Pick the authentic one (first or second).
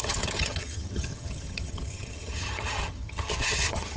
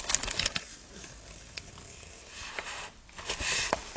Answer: second